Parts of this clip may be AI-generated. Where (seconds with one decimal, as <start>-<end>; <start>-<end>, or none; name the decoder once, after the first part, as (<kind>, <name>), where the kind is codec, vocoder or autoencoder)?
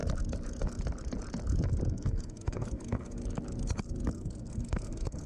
1.9-3.2 (codec, SNAC); 4.1-5.3